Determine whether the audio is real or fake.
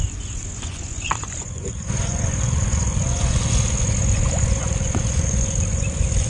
fake